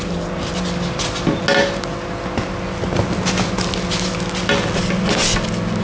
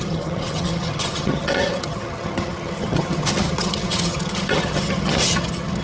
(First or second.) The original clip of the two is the first